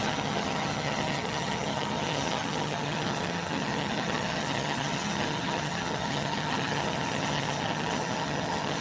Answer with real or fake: fake